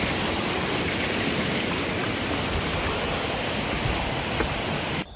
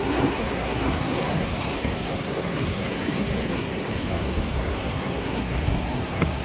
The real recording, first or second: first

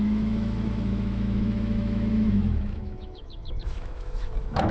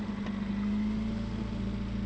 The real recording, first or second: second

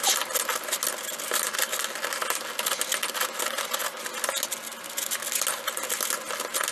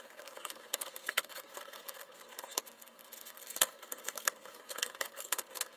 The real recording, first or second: first